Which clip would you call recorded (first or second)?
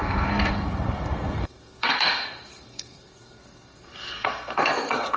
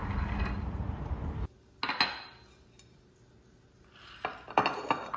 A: second